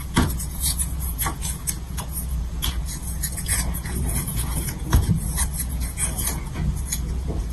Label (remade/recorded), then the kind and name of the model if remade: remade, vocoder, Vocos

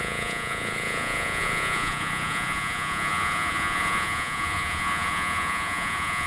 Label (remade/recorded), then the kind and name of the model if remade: remade, vocoder, Vocos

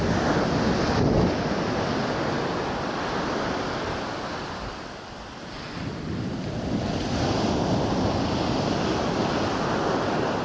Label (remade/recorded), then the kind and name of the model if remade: recorded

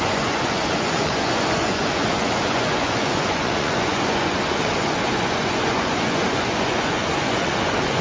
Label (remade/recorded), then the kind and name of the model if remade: remade, vocoder, Vocos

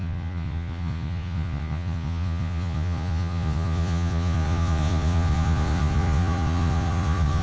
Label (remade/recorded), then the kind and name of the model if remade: remade, vocoder, Vocos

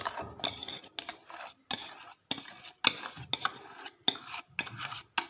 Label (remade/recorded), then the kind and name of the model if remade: recorded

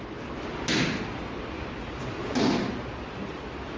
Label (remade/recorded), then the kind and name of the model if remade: recorded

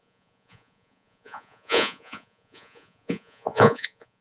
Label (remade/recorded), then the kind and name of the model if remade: remade, vocoder, Vocos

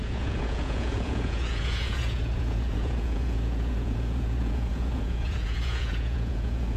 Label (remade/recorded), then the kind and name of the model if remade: remade, vocoder, Vocos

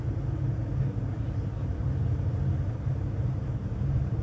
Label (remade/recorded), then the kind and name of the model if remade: recorded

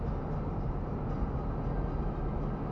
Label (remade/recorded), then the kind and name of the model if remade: recorded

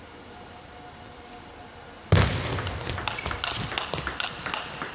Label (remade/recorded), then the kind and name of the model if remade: recorded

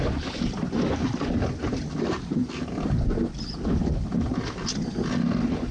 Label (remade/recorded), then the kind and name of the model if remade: recorded